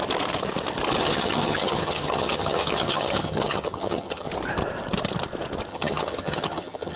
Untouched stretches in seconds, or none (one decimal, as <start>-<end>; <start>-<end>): 0.0-1.0; 4.3-5.7